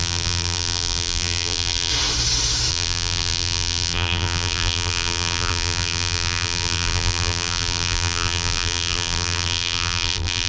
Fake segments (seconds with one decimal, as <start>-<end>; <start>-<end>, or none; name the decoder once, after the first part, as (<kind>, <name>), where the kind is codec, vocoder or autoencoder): 0.0-1.9 (vocoder, BigVGAN v2); 2.7-10.5